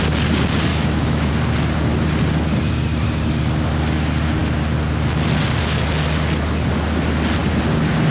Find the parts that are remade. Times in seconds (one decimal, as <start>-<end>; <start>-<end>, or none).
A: 0.7-1.3